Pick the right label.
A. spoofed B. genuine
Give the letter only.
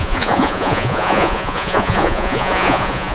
A